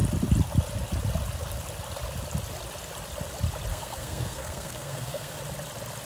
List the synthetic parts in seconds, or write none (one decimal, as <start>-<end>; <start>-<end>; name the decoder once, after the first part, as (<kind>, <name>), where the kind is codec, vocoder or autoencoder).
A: 3.7-5.4 (codec, SNAC)